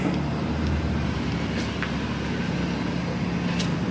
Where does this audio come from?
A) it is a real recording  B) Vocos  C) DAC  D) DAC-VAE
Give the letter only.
A